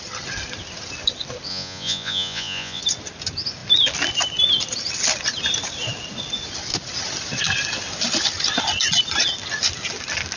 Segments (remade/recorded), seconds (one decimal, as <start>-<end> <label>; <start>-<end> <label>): 0.0-1.5 recorded; 1.5-2.8 remade; 2.8-10.4 recorded